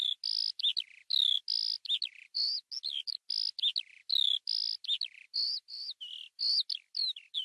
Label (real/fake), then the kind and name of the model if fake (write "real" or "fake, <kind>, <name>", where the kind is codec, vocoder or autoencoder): real